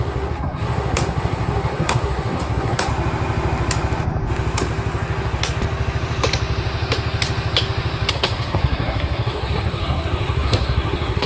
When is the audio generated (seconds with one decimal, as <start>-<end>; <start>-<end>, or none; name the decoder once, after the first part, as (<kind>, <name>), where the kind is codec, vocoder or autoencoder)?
0.0-2.9 (codec, SNAC); 8.1-11.3

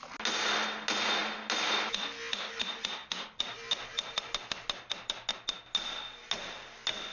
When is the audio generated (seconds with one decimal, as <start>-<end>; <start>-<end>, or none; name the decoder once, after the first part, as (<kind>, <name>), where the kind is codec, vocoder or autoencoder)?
none

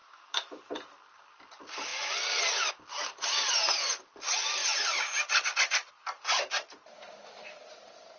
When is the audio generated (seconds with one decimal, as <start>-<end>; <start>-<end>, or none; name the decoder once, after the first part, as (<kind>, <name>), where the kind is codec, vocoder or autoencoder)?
0.0-0.6 (autoencoder, DAC-VAE)